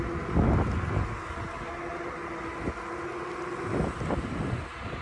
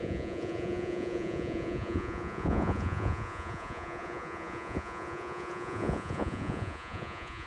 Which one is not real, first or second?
second